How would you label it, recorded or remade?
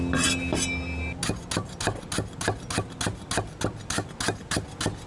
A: recorded